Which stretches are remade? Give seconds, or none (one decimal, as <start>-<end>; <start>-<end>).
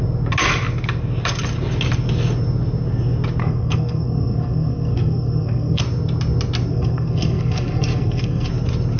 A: 3.4-5.8; 6.7-8.5